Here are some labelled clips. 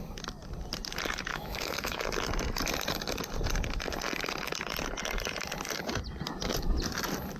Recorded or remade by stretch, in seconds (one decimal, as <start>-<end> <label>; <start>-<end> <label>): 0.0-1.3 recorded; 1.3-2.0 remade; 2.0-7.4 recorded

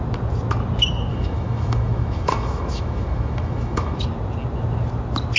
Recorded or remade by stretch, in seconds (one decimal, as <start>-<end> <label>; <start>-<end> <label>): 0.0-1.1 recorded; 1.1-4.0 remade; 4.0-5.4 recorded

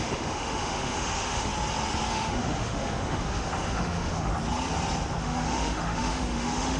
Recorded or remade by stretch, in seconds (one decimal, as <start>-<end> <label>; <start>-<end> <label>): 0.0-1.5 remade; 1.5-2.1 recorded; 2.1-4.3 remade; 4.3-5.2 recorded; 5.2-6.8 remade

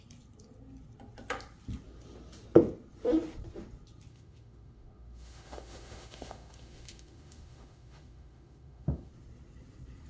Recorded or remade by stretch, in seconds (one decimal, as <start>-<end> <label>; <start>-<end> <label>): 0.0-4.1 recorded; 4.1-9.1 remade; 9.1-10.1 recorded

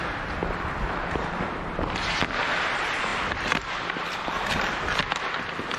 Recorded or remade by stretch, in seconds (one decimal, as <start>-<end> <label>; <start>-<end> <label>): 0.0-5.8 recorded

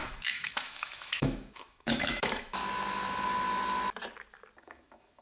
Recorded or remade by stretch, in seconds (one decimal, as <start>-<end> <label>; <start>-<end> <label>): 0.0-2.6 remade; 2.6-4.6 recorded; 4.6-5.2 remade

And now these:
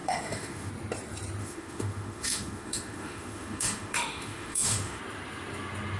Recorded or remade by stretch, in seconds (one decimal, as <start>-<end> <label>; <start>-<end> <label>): 0.0-0.7 remade; 0.7-1.4 recorded; 1.4-5.0 remade; 5.0-6.0 recorded

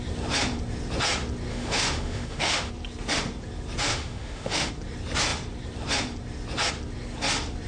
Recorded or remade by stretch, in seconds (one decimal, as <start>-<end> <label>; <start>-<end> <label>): 0.0-1.5 recorded; 1.5-2.7 remade; 2.7-3.9 recorded; 3.9-4.7 remade; 4.7-7.7 recorded